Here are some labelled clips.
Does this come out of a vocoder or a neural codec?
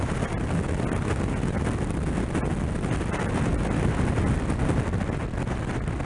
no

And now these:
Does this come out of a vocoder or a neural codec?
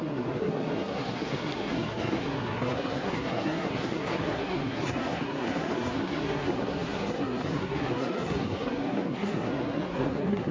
yes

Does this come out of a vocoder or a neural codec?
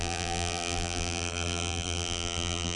yes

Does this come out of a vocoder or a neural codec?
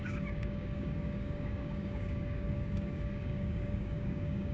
yes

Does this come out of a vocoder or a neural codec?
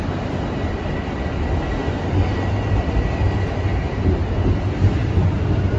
no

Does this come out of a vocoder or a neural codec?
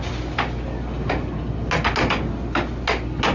no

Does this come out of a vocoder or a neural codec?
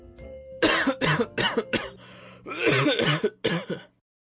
no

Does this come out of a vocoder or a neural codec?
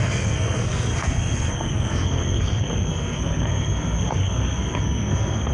yes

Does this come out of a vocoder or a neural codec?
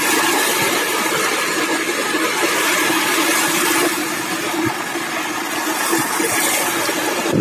no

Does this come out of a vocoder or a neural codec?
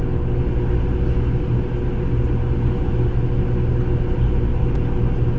no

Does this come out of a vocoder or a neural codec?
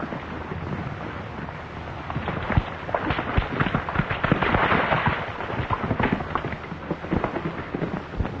no